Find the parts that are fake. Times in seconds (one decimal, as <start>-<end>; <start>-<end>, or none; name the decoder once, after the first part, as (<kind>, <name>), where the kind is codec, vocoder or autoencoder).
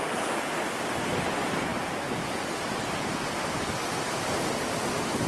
none